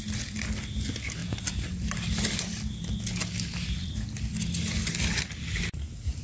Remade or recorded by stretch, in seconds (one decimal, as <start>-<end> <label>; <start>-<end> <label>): 0.0-6.2 recorded

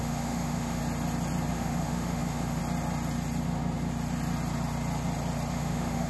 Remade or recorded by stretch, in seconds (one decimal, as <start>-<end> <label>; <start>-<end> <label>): 0.0-0.8 remade; 0.8-1.5 recorded; 1.5-2.6 remade; 2.6-5.5 recorded; 5.5-6.1 remade

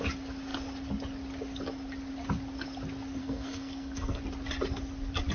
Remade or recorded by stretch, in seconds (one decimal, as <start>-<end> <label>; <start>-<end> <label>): 0.0-3.2 recorded; 3.2-4.2 remade; 4.2-5.3 recorded

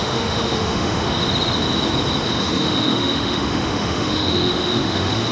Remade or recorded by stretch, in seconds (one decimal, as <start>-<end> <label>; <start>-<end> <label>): 0.0-1.2 remade; 1.2-2.3 recorded; 2.3-5.3 remade

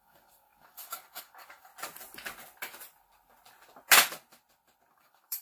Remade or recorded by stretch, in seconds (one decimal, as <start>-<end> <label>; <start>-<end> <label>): 0.0-1.7 remade; 1.7-4.9 recorded; 4.9-5.4 remade

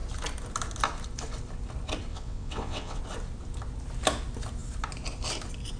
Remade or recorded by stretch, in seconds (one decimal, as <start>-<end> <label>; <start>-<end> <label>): 0.0-2.1 recorded; 2.1-3.0 remade; 3.0-5.8 recorded

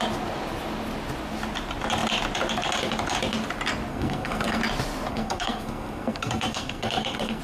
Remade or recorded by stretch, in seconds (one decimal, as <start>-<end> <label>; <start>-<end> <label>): 0.0-3.9 recorded; 3.9-4.6 remade; 4.6-5.1 recorded; 5.1-7.4 remade